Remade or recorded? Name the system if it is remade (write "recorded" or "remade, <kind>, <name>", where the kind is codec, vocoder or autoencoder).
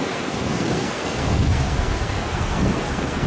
remade, codec, SNAC